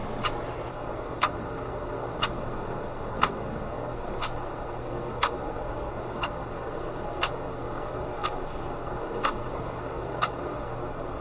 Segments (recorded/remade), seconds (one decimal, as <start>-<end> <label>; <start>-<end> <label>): 0.0-0.7 recorded; 0.7-11.2 remade